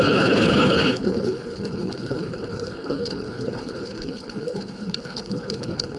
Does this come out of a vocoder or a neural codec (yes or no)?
yes